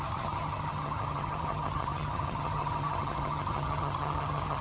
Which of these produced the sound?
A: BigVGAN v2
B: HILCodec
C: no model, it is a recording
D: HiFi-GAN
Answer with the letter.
D